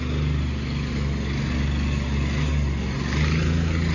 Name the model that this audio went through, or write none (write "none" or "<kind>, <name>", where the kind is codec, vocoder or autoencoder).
none